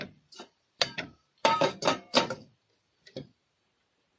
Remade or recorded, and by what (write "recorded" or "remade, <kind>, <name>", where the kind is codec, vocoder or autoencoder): remade, vocoder, BigVGAN v2